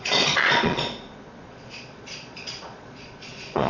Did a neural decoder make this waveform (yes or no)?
yes